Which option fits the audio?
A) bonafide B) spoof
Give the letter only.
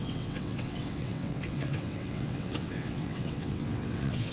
B